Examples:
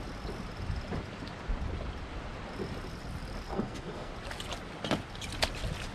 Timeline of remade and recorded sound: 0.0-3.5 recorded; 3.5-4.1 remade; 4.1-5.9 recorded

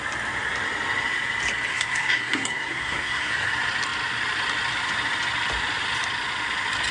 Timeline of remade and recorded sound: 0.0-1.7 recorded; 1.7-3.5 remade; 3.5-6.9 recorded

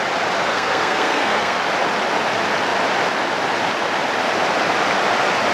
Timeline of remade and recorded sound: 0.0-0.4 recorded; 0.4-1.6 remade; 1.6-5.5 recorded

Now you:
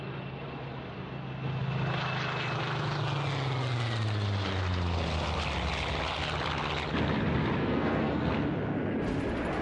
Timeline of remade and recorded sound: 0.0-7.6 recorded; 7.6-8.3 remade; 8.3-9.6 recorded

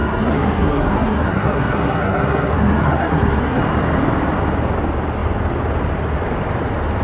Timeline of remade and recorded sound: 0.0-3.6 remade; 3.6-7.0 recorded

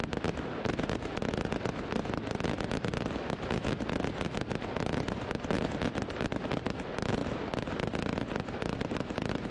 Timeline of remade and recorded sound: 0.0-9.5 recorded

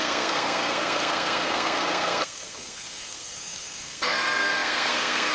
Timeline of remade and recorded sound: 0.0-5.3 remade